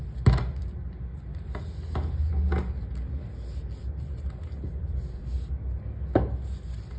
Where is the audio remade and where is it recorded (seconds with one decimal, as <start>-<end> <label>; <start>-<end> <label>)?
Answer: 0.0-7.0 recorded